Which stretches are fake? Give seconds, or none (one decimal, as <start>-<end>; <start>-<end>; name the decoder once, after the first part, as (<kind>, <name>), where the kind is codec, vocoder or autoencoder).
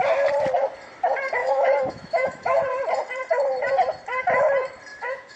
1.4-2.6 (autoencoder, DAC-VAE); 4.9-5.4